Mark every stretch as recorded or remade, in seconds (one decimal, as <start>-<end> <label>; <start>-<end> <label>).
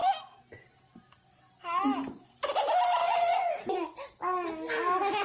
0.0-3.0 recorded; 3.0-3.6 remade; 3.6-5.2 recorded